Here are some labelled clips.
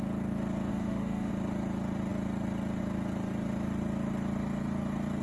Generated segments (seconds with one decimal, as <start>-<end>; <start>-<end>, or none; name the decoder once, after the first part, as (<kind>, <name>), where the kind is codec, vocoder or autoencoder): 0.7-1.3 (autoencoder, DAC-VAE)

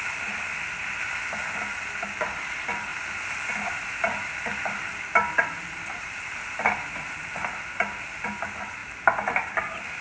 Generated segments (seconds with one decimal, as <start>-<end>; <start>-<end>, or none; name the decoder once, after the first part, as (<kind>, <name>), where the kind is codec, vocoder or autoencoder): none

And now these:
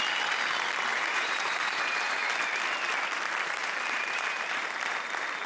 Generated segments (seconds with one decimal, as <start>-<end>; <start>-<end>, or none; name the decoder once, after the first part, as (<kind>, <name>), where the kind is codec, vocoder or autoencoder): 0.9-2.3 (vocoder, BigVGAN v2); 3.6-4.6

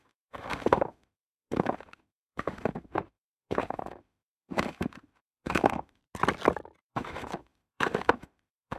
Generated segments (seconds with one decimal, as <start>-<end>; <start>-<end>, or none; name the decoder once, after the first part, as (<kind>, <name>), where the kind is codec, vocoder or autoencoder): 0.0-6.0 (autoencoder, DAC-VAE); 6.9-8.8

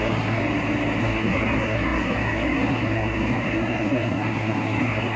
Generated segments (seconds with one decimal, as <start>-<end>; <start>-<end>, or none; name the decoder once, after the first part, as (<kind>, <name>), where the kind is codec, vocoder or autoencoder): 0.0-0.4 (codec, SNAC); 1.0-5.2

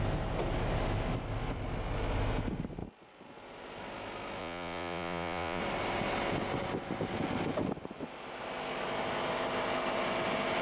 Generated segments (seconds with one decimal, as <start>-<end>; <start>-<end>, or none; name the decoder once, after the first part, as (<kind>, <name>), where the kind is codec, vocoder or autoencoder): 4.4-5.6 (vocoder, Vocos)

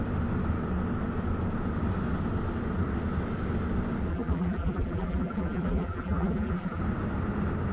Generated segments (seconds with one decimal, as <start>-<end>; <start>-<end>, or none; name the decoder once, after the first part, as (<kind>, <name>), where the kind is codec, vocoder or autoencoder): 4.1-6.8 (vocoder, BigVGAN v2)

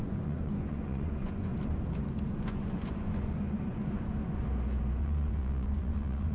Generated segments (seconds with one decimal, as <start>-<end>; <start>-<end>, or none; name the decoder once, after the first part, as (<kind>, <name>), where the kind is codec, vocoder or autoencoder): 0.0-1.5 (vocoder, Vocos); 2.3-4.4; 5.0-6.3